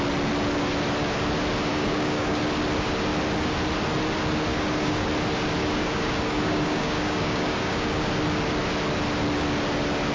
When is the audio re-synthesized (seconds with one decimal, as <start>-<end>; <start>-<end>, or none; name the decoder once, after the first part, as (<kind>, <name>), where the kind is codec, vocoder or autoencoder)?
1.7-2.4 (codec, DAC); 4.5-5.1; 5.6-7.9